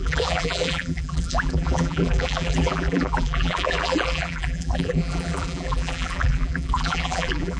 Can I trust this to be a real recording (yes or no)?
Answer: no